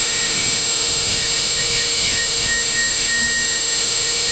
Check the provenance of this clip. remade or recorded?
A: remade